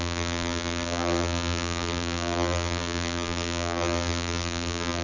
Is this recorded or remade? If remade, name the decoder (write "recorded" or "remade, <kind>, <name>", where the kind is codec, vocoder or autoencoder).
remade, vocoder, BigVGAN v2